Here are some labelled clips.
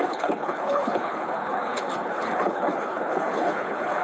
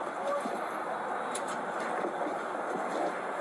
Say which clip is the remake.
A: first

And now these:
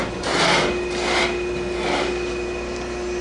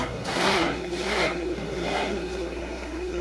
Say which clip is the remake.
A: second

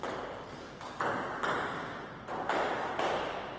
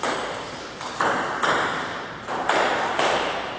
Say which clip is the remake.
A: second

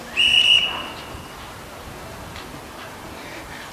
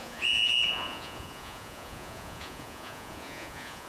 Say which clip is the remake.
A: second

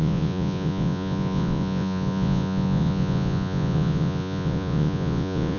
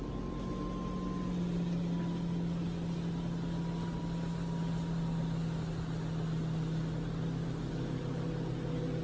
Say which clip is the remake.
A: first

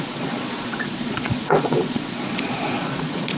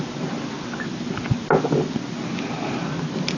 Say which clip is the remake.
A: first